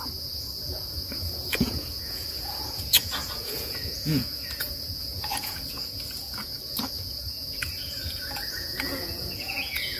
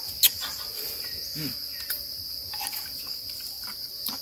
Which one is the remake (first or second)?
first